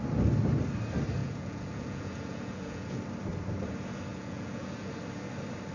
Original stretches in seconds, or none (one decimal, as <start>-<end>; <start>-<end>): 0.0-1.2; 3.0-4.1; 4.9-5.7